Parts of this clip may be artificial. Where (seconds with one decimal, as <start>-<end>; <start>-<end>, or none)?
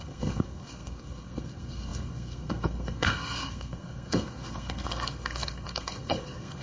0.0-6.6